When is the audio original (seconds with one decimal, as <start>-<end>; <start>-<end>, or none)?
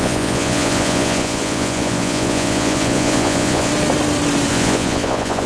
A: 3.7-4.5